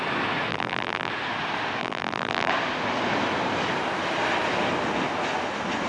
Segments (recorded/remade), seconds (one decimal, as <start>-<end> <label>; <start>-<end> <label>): 0.0-0.5 recorded; 0.5-1.1 remade; 1.1-1.8 recorded; 1.8-2.5 remade; 2.5-5.9 recorded